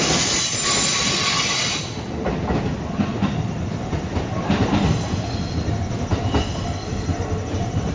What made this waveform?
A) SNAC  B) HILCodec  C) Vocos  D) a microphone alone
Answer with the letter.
D